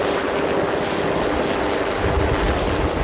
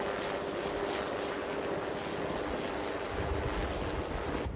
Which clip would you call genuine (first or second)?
second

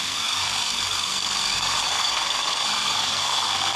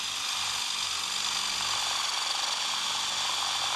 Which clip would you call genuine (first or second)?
second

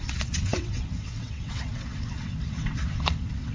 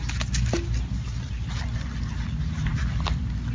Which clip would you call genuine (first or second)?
second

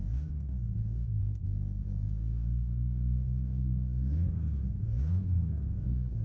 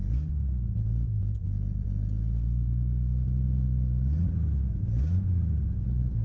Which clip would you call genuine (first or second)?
second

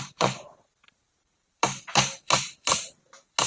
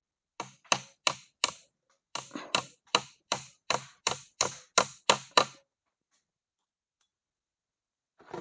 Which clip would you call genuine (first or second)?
second